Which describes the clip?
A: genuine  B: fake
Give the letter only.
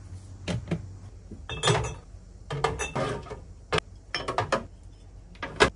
A